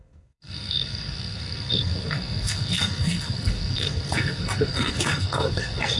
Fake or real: fake